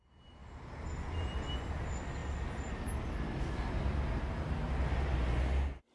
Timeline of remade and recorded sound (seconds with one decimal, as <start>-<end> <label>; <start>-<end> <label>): 0.0-5.9 recorded